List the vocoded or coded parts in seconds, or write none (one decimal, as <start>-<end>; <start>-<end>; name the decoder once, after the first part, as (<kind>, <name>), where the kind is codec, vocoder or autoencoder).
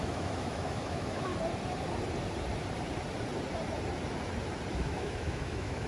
0.0-1.3 (autoencoder, DAC-VAE); 4.7-5.9